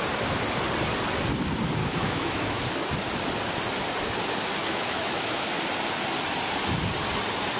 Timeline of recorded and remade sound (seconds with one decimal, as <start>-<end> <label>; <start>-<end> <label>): 0.0-1.8 recorded; 1.8-2.6 remade; 2.6-4.6 recorded; 4.6-5.5 remade; 5.5-7.6 recorded

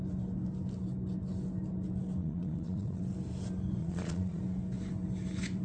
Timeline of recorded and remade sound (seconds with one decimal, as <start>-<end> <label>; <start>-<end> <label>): 0.0-2.2 recorded; 2.2-3.0 remade; 3.0-3.8 recorded; 3.8-4.4 remade; 4.4-5.6 recorded

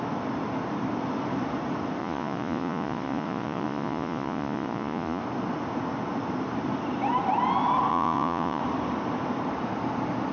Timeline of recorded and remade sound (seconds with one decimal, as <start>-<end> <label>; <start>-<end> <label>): 0.0-2.0 recorded; 2.0-5.2 remade; 5.2-7.9 recorded; 7.9-8.6 remade; 8.6-10.3 recorded

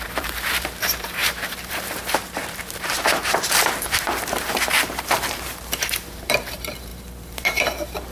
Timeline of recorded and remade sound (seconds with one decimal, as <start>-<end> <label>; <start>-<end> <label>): 0.0-8.1 remade

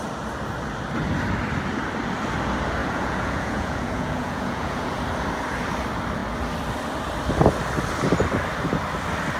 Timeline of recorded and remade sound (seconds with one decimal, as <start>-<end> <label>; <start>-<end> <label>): 0.0-2.8 recorded; 2.8-5.0 remade; 5.0-9.4 recorded

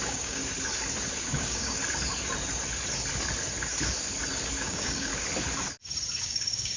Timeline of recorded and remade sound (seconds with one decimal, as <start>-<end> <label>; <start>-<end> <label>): 0.0-0.4 remade; 0.4-1.2 recorded; 1.2-1.8 remade; 1.8-4.6 recorded; 4.6-5.1 remade; 5.1-6.2 recorded; 6.2-6.8 remade

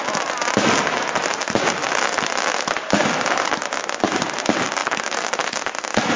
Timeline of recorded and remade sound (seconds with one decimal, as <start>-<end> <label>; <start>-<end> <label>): 0.0-6.2 recorded

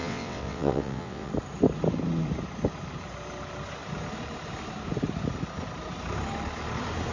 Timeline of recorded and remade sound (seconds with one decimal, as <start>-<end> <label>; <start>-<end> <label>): 0.0-1.3 remade; 1.3-7.1 recorded